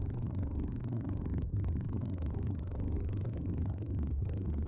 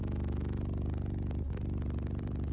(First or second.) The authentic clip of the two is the second